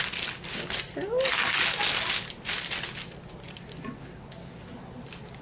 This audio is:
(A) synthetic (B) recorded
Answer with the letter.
B